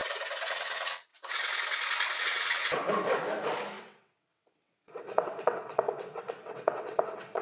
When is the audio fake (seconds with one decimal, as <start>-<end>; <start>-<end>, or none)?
0.5-1.1; 2.2-2.8; 3.8-7.4